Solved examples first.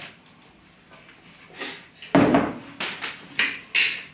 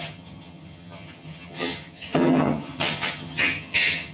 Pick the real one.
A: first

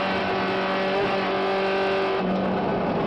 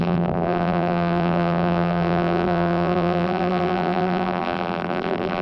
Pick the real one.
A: first